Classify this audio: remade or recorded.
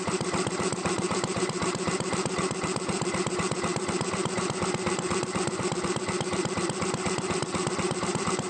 remade